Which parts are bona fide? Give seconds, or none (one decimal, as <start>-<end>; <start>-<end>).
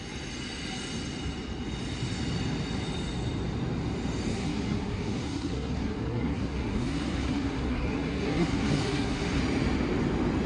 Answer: 0.0-4.3; 9.4-10.5